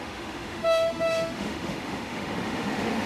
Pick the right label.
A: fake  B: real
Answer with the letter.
A